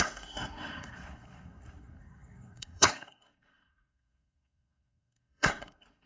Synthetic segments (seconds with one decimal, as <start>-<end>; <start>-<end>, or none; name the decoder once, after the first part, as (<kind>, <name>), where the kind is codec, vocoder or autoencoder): 0.0-6.1 (codec, SNAC)